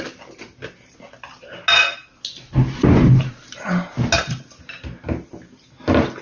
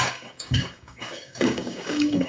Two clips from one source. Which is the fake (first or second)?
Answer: second